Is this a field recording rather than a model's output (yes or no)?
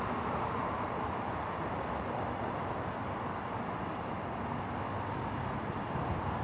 yes